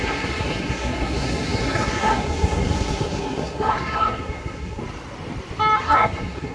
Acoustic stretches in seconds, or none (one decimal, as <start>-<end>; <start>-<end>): 4.8-5.8